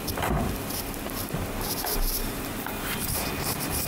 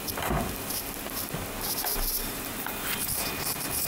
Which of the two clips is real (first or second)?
second